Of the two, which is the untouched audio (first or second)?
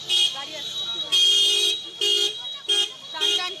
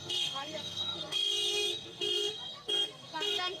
first